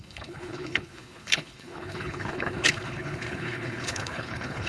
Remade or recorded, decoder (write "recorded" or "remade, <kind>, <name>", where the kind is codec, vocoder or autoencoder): remade, codec, HILCodec